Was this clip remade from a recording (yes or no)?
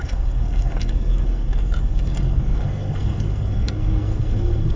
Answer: yes